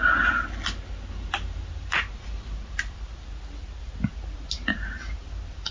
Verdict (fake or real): real